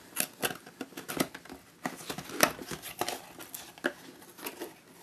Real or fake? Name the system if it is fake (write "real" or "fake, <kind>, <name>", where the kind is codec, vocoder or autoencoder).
real